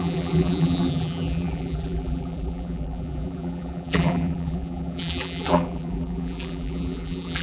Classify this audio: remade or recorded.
remade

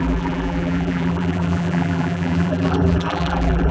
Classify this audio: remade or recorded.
remade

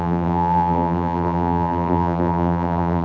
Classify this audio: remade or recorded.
remade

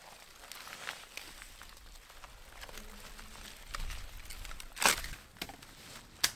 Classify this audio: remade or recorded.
recorded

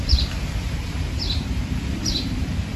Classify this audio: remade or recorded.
remade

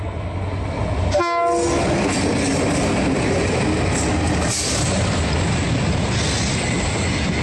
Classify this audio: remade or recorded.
recorded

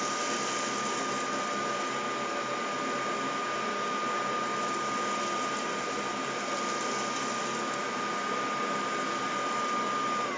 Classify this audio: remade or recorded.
recorded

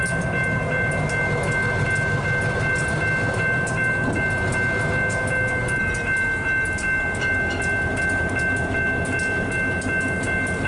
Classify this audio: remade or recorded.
recorded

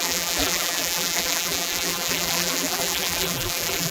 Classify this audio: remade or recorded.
remade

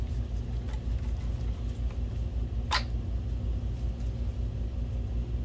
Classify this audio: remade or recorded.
recorded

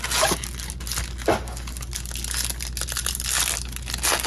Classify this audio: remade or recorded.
recorded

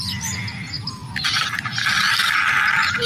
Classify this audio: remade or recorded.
recorded